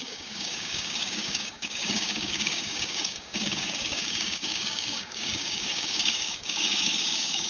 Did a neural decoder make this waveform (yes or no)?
yes